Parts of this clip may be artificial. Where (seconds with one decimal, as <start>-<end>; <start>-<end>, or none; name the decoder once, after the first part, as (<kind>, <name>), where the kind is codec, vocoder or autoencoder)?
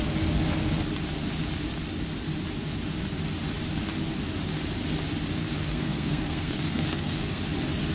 5.3-7.4 (codec, SNAC)